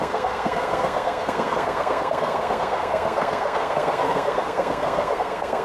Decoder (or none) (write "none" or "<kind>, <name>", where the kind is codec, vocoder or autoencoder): codec, SNAC